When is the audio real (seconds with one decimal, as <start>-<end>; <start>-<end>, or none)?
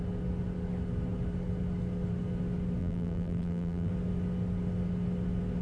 0.0-2.8; 3.9-5.6